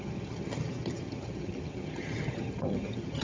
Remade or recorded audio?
remade